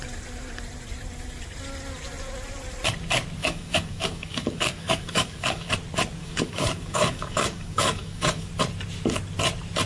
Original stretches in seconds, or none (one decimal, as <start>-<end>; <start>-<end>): 0.0-3.4; 5.7-6.2; 8.5-9.9